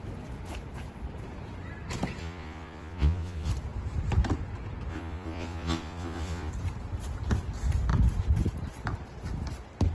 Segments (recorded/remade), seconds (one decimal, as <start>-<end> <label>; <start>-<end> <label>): 0.0-2.2 recorded; 2.2-3.5 remade; 3.5-4.9 recorded; 4.9-6.5 remade; 6.5-9.9 recorded